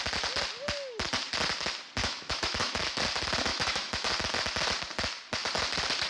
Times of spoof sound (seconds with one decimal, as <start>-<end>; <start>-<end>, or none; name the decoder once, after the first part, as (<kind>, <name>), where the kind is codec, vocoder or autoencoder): 2.0-3.0 (autoencoder, DAC-VAE); 3.5-4.1